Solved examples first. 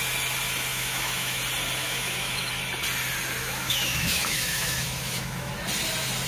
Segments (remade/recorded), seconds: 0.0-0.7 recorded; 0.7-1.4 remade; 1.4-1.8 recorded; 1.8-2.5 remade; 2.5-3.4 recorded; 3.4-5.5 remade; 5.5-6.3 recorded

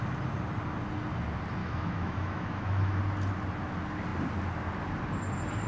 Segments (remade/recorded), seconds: 0.0-1.6 recorded; 1.6-3.0 remade; 3.0-5.7 recorded